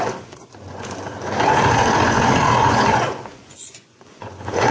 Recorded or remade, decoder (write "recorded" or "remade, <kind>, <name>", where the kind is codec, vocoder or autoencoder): remade, vocoder, Vocos